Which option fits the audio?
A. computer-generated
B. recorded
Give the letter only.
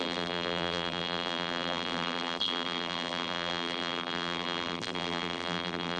A